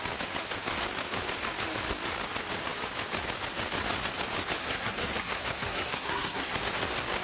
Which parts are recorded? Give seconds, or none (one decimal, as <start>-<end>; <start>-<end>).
0.0-4.6; 6.6-7.2